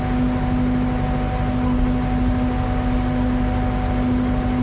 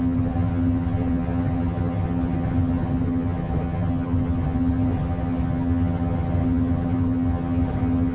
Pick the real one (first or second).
first